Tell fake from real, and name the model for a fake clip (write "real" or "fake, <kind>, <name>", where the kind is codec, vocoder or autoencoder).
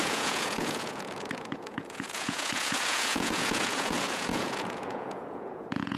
fake, vocoder, Vocos